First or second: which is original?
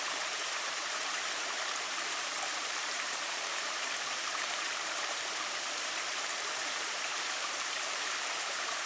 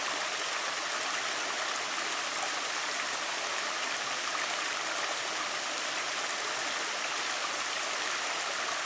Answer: second